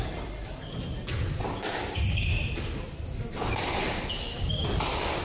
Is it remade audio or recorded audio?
recorded